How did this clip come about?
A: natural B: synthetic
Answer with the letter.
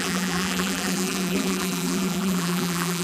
B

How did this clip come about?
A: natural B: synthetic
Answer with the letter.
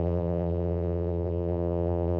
B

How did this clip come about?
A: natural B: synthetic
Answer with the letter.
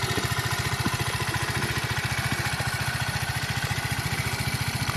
B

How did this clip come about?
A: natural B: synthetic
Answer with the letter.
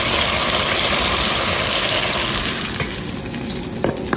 A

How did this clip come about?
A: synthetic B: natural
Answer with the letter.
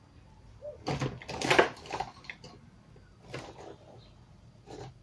B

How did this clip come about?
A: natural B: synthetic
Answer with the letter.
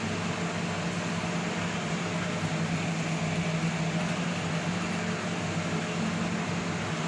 A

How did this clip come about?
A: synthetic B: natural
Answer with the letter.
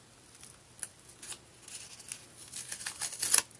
B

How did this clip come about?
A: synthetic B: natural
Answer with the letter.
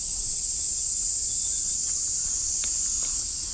A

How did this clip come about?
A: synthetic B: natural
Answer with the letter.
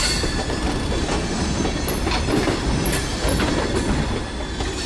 B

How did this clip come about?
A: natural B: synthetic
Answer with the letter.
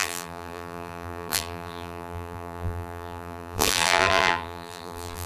B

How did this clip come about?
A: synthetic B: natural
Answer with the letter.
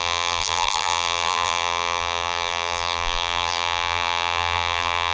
A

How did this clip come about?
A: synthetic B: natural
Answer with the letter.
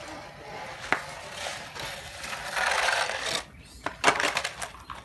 B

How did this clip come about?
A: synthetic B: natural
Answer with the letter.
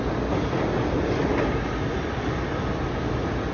B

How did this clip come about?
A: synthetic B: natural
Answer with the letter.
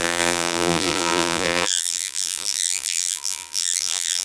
A